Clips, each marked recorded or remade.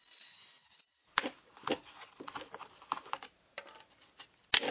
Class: recorded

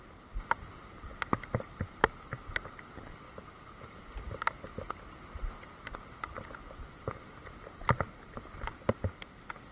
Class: recorded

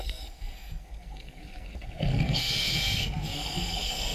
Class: remade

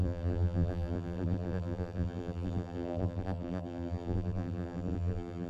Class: remade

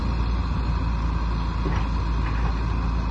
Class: recorded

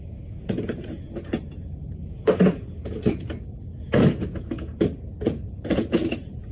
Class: remade